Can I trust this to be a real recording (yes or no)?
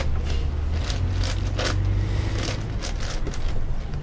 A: yes